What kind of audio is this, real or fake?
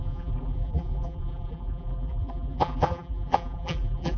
fake